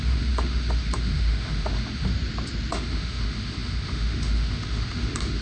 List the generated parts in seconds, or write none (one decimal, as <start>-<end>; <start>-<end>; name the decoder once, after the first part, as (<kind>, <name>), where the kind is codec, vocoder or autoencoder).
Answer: 0.0-2.1 (autoencoder, DAC-VAE); 2.7-5.4